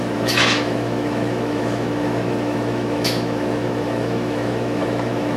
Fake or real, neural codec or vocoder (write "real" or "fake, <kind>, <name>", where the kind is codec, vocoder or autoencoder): fake, autoencoder, DAC-VAE